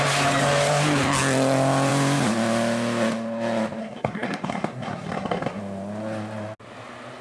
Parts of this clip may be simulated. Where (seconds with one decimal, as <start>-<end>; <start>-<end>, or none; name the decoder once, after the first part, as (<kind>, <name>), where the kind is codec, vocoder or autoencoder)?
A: 3.8-5.6 (codec, SNAC)

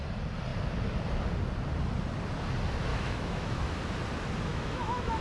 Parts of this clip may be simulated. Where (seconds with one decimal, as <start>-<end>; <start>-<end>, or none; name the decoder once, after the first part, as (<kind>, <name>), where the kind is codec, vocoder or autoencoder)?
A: 2.9-3.6 (autoencoder, DAC-VAE); 4.5-5.2